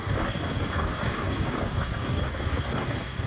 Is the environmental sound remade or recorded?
remade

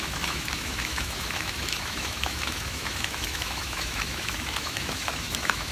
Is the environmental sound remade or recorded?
remade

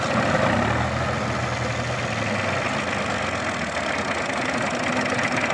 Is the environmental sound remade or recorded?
recorded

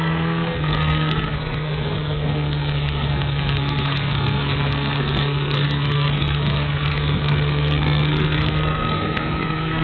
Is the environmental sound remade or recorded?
remade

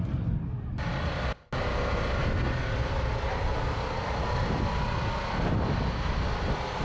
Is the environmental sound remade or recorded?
recorded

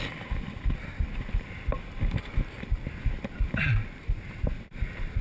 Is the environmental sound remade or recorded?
recorded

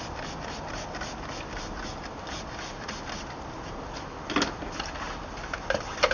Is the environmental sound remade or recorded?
recorded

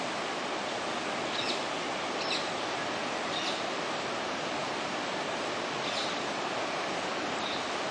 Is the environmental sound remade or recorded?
recorded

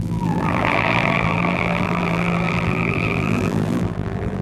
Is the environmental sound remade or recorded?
remade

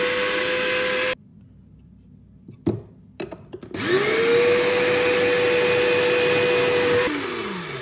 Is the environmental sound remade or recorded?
recorded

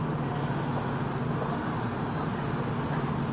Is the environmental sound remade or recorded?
recorded